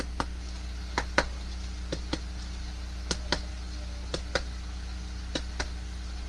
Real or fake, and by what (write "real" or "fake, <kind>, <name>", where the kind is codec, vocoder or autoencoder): real